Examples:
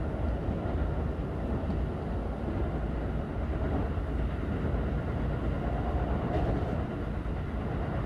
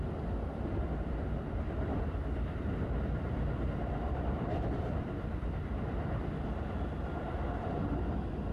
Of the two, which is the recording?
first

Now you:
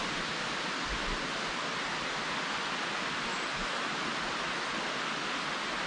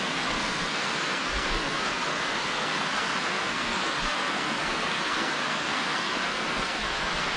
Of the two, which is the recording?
first